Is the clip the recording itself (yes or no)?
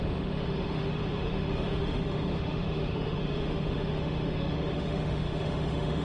no